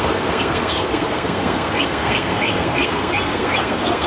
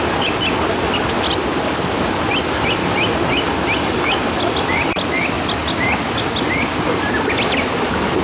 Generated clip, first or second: first